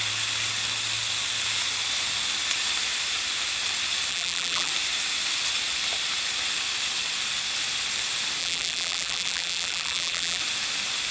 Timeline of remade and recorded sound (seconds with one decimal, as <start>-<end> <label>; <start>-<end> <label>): 0.0-4.1 recorded; 4.1-4.7 remade; 4.7-8.4 recorded; 8.4-10.4 remade; 10.4-11.1 recorded